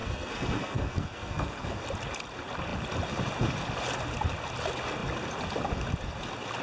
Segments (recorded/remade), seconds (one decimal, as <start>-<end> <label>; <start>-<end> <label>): 0.0-1.8 remade; 1.8-6.6 recorded